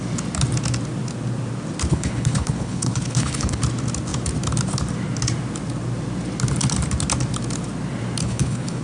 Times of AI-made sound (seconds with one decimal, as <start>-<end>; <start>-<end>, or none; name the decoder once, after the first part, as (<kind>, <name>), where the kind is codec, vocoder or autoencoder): 1.9-3.6 (codec, HILCodec); 8.2-8.8